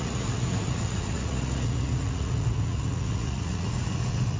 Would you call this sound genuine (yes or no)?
no